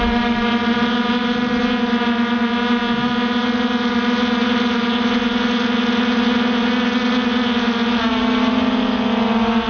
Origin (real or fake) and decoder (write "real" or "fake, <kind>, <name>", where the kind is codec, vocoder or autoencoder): real